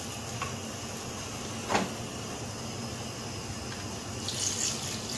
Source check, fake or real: real